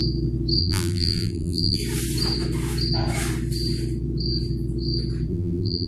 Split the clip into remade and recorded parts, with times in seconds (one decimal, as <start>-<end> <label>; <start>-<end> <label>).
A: 0.0-0.6 recorded; 0.6-1.8 remade; 1.8-5.3 recorded; 5.3-5.9 remade